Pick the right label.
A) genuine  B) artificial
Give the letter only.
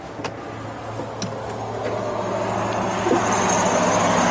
A